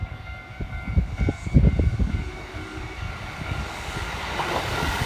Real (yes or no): no